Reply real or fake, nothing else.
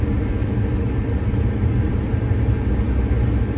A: real